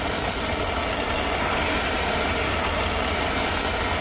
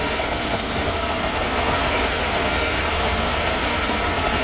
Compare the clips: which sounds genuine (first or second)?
first